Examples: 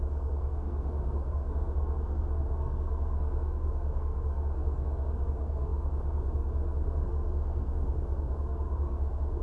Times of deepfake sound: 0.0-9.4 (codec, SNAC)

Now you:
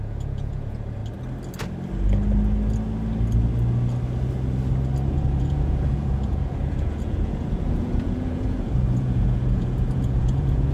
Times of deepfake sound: 0.0-1.0 (vocoder, Vocos); 5.1-10.7

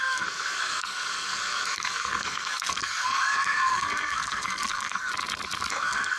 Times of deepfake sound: 0.0-5.1 (codec, SNAC); 5.7-6.2

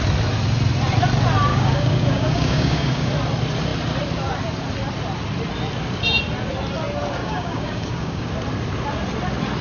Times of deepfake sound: 1.5-3.1 (codec, DAC); 7.2-8.3